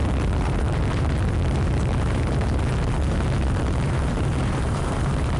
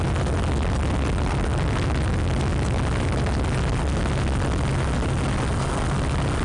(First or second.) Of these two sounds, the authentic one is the second